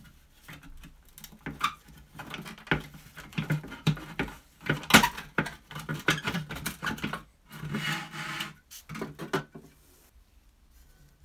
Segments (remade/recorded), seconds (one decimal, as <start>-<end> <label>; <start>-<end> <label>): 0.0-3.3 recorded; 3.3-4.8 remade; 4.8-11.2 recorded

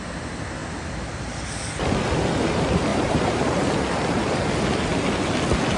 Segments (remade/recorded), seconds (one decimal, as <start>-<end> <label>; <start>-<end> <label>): 0.0-2.9 recorded; 2.9-3.5 remade; 3.5-5.8 recorded

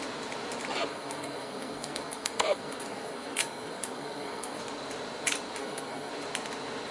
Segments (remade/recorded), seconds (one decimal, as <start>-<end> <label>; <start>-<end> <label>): 0.0-0.9 recorded; 0.9-4.6 remade; 4.6-5.6 recorded; 5.6-6.1 remade; 6.1-6.9 recorded

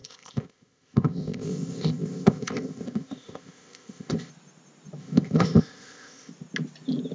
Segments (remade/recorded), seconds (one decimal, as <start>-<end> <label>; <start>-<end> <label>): 0.0-4.3 remade; 4.3-5.0 recorded; 5.0-6.3 remade; 6.3-7.1 recorded

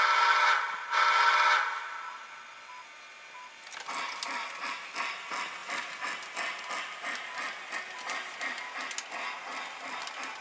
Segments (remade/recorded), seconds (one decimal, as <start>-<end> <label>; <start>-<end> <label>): 0.0-10.4 recorded

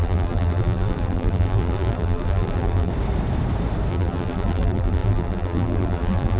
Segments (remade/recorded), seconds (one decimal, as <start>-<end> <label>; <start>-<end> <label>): 0.0-2.9 remade; 2.9-3.9 recorded; 3.9-6.4 remade

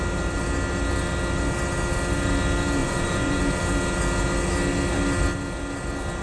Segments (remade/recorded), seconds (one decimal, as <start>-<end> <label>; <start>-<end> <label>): 0.0-2.8 recorded; 2.8-3.4 remade; 3.4-6.2 recorded

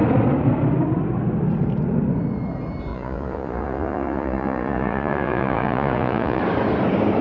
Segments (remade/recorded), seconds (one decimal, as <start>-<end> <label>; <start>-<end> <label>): 0.0-2.9 recorded; 2.9-6.4 remade; 6.4-7.2 recorded